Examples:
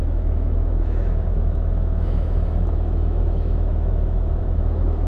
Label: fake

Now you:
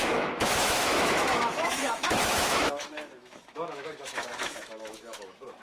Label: fake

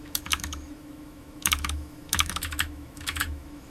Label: fake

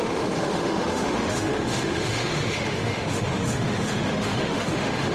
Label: fake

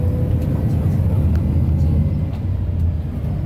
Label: real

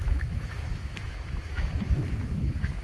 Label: fake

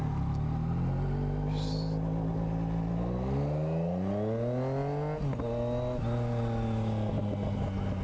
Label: real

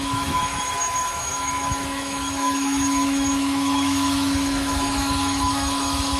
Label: fake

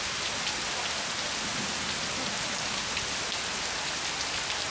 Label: real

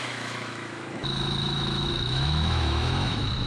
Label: fake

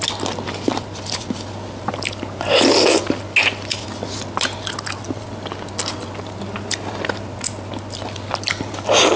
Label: real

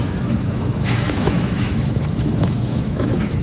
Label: fake